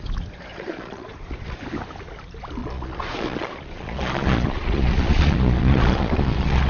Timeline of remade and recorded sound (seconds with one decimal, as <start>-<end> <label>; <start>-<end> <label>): 0.0-0.5 recorded; 0.5-1.6 remade; 1.6-2.6 recorded; 2.6-6.7 remade